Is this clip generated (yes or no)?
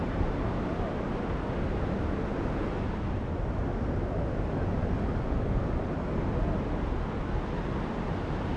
no